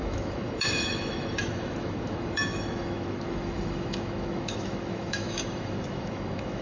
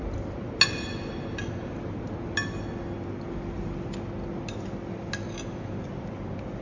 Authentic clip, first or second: second